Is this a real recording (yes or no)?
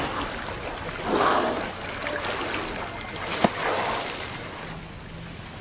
yes